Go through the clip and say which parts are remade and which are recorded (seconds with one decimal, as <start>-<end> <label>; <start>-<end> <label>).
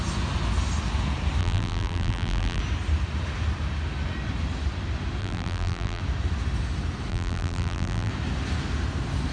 0.0-1.4 recorded; 1.4-2.6 remade; 2.6-5.2 recorded; 5.2-6.0 remade; 6.0-7.1 recorded; 7.1-8.1 remade; 8.1-9.3 recorded